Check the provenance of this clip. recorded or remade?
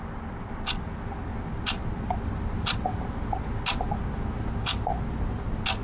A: recorded